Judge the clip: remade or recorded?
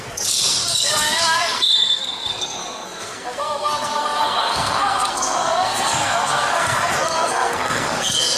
remade